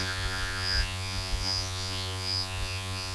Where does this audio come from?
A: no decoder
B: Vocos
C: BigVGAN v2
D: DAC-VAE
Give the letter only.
B